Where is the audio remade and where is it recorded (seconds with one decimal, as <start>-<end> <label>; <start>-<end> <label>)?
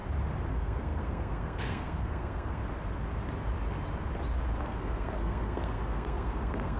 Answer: 0.0-0.5 recorded; 0.5-2.6 remade; 2.6-4.6 recorded; 4.6-6.8 remade